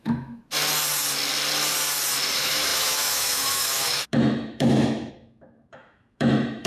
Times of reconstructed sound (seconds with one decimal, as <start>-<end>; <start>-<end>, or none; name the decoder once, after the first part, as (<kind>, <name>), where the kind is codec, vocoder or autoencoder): 0.0-0.4 (autoencoder, DAC-VAE); 2.3-6.7